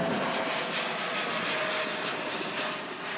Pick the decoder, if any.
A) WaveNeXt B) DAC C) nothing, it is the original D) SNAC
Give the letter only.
C